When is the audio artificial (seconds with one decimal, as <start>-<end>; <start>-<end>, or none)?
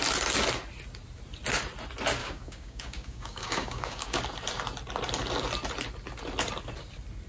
2.2-4.2